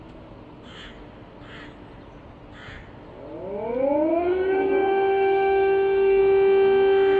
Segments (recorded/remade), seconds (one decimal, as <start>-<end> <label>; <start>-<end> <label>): 0.0-4.1 recorded; 4.1-6.2 remade; 6.2-7.2 recorded